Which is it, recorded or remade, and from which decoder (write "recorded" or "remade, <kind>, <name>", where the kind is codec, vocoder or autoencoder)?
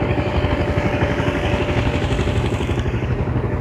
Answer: remade, codec, DAC